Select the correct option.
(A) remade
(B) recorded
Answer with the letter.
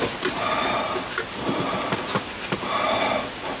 B